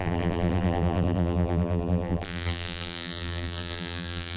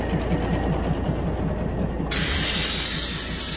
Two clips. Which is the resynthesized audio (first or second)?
first